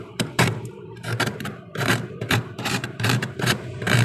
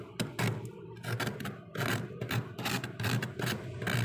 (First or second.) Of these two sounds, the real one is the second